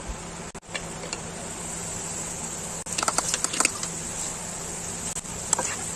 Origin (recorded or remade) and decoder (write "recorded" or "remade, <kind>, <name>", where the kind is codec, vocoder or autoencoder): recorded